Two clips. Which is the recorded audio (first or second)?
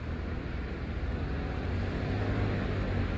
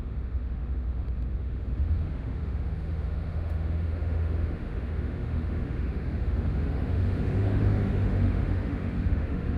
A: first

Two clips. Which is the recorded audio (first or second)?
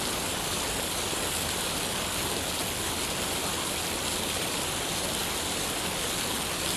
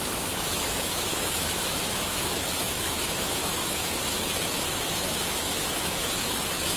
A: first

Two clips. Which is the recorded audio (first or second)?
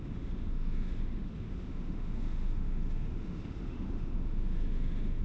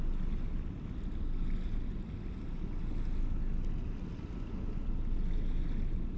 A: second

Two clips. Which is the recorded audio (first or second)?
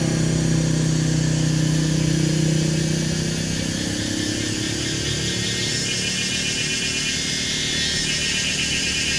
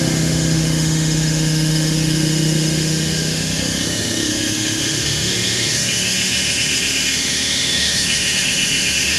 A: first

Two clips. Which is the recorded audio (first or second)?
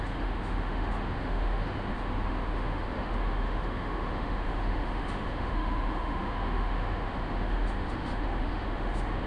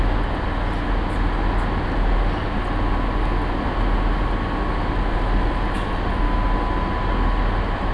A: second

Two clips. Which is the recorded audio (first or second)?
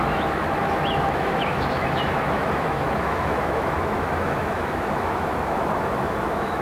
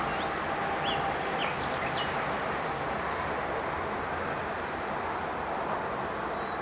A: second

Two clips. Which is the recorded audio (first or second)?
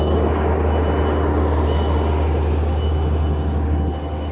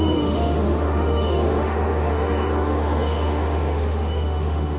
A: first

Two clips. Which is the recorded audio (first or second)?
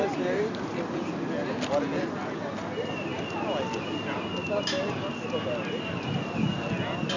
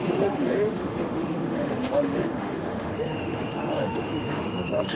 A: first